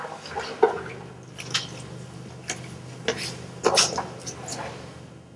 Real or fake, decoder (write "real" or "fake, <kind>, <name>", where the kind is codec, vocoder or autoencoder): real